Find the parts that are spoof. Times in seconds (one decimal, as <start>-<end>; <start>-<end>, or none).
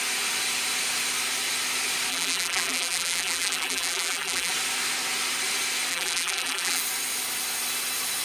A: 2.1-4.5; 5.9-6.8